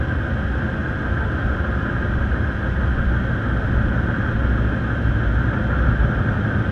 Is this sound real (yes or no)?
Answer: yes